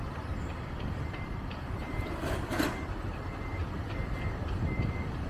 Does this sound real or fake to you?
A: fake